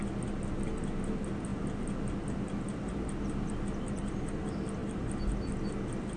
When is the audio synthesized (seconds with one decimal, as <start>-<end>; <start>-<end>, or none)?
none